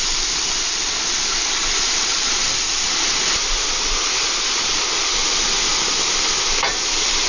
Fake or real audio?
real